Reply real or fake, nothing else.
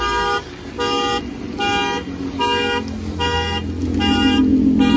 real